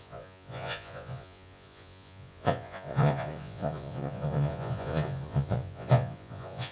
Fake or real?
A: fake